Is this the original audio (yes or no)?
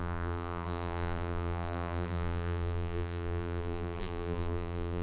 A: no